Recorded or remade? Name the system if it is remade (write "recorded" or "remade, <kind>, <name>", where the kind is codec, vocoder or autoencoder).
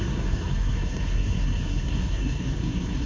remade, codec, SNAC